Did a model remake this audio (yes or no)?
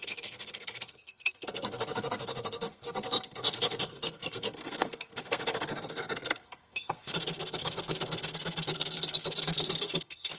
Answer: yes